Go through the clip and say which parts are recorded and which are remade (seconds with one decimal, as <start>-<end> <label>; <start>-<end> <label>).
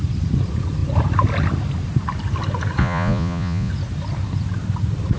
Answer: 0.0-2.8 recorded; 2.8-3.7 remade; 3.7-5.2 recorded